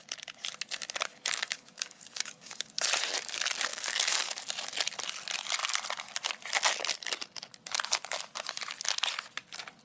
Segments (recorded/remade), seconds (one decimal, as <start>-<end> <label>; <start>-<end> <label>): 0.0-1.1 recorded; 1.1-2.8 remade; 2.8-3.7 recorded; 3.7-4.3 remade; 4.3-9.8 recorded